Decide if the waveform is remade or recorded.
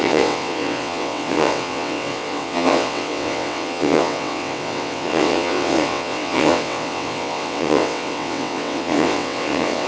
remade